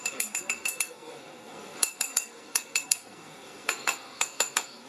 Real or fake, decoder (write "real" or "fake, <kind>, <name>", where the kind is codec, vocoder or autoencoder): fake, codec, SNAC